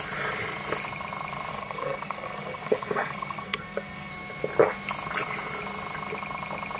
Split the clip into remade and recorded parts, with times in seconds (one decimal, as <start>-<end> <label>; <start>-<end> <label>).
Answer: 0.0-1.5 recorded; 1.5-4.1 remade; 4.1-6.8 recorded